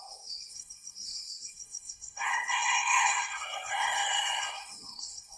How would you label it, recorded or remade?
remade